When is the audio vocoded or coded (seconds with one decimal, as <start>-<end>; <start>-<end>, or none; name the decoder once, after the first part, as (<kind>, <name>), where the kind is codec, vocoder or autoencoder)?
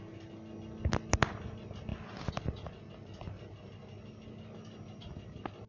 none